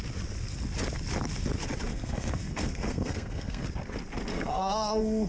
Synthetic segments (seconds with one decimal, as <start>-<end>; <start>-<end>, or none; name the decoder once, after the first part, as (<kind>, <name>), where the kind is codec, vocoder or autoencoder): 1.9-3.7 (codec, SNAC); 4.3-5.3